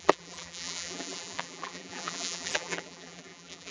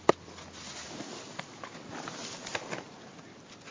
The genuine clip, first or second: second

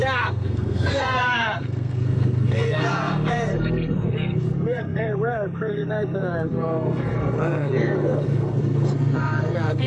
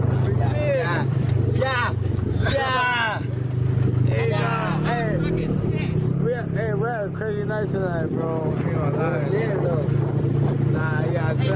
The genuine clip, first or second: second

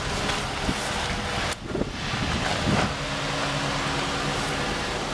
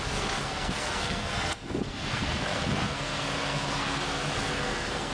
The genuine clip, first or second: first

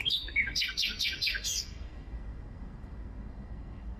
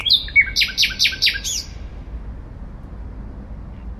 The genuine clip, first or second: second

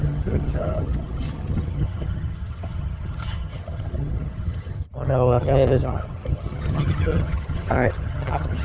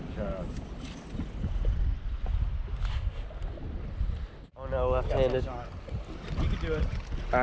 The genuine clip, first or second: second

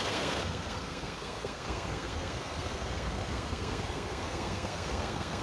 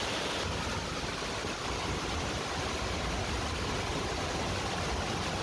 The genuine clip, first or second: second